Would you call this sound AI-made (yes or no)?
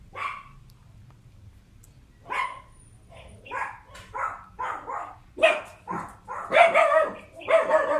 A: no